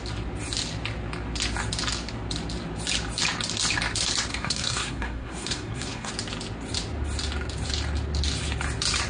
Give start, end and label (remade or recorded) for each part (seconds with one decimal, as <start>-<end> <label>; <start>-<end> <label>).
0.0-4.3 recorded; 4.3-6.1 remade; 6.1-9.1 recorded